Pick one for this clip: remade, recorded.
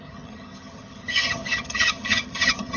remade